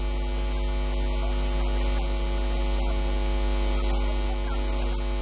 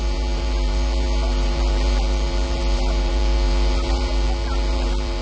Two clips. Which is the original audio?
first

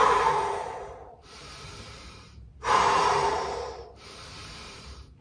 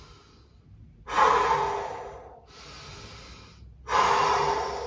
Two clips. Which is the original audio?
second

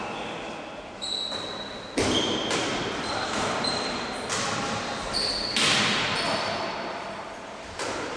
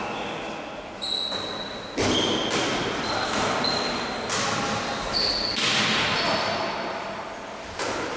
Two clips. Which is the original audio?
second